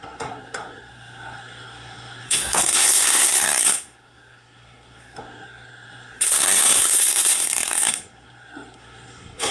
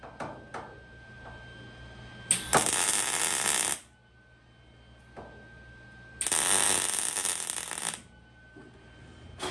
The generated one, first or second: first